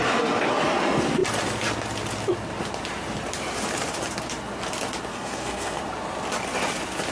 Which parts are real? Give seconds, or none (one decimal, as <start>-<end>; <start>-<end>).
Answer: 0.0-5.1; 5.8-7.1